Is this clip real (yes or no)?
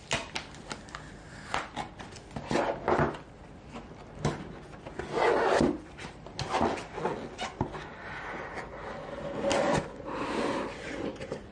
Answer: yes